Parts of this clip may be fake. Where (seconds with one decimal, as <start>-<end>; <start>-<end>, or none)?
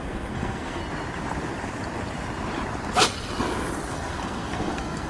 0.0-0.8; 3.9-5.1